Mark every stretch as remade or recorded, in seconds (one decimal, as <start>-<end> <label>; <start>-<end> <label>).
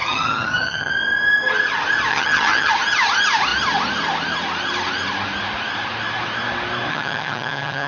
0.0-0.9 remade; 0.9-2.1 recorded; 2.1-2.7 remade; 2.7-6.9 recorded; 6.9-7.9 remade